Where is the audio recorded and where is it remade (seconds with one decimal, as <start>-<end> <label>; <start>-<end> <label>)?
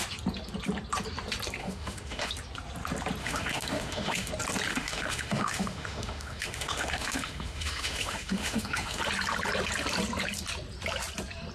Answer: 0.0-1.6 recorded; 1.6-2.3 remade; 2.3-3.2 recorded; 3.2-4.3 remade; 4.3-4.7 recorded; 4.7-9.0 remade; 9.0-11.5 recorded